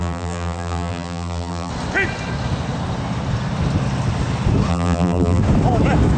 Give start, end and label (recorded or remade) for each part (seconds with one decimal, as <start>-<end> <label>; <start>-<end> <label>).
0.0-1.7 remade; 1.7-4.7 recorded; 4.7-5.4 remade; 5.4-6.2 recorded